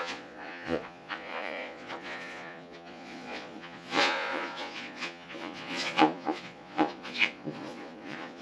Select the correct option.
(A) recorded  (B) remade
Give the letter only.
B